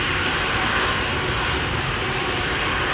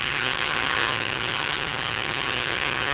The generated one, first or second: second